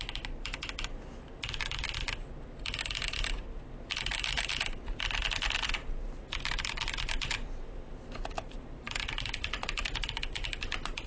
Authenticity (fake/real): real